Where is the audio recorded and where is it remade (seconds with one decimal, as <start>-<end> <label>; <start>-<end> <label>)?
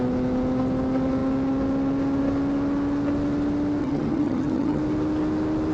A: 0.0-3.8 recorded; 3.8-4.8 remade; 4.8-5.7 recorded